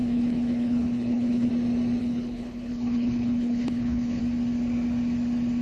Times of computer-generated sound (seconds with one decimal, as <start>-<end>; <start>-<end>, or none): 0.0-1.5; 2.0-4.2